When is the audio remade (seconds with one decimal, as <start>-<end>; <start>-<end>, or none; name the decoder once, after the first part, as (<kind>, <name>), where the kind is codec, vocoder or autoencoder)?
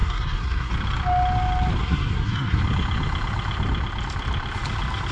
0.0-0.7 (codec, SNAC); 1.8-2.6